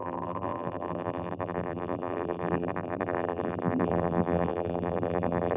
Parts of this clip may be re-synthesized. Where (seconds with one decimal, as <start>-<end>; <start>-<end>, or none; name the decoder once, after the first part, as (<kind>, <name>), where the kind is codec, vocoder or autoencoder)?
0.0-5.6 (vocoder, BigVGAN v2)